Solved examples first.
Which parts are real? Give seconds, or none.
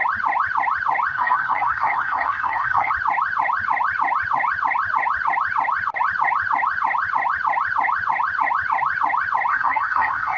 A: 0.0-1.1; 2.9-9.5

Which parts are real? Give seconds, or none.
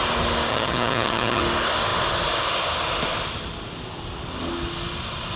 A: 0.0-0.5; 1.4-5.4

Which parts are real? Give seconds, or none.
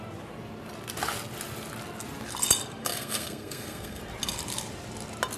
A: 0.0-2.8; 4.0-5.4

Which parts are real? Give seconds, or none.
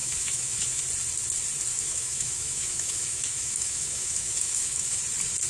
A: 0.8-1.7; 5.0-5.5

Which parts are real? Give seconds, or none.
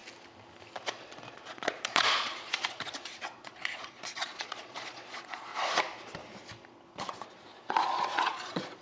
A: 0.0-1.0; 5.5-6.9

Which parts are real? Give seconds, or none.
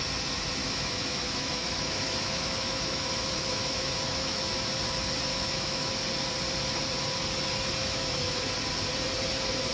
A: 0.0-0.6; 4.8-5.3; 5.9-7.8; 8.4-9.7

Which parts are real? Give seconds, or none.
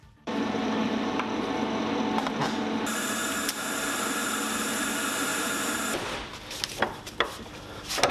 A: 1.1-5.3; 5.8-8.1